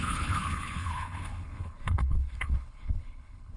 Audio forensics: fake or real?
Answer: fake